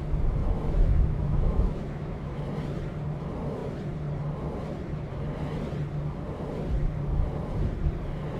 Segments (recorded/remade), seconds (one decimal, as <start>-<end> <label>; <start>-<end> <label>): 0.0-0.4 recorded; 0.4-2.4 remade; 2.4-8.4 recorded